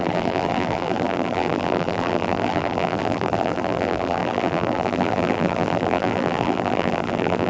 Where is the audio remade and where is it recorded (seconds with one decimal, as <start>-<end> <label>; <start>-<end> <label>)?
0.0-7.5 remade